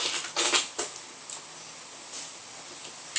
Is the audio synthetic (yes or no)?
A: no